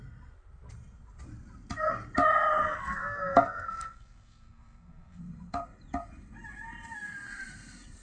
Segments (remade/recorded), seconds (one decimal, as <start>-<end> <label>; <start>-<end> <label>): 0.0-2.6 recorded; 2.6-5.2 remade; 5.2-8.0 recorded